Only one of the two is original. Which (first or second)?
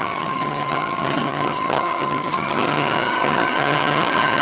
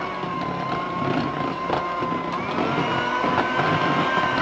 second